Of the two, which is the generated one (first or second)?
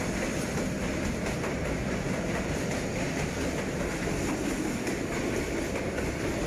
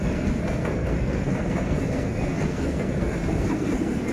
second